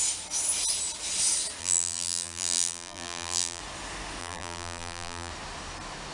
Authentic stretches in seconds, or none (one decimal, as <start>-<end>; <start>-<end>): 0.0-1.6; 3.6-4.2; 5.3-6.1